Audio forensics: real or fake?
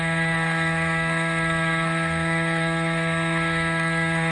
fake